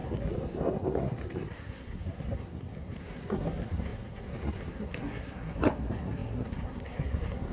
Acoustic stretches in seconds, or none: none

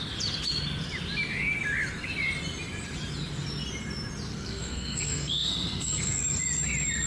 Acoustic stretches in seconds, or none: 0.0-4.3; 6.2-7.1